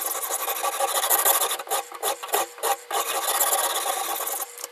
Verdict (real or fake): real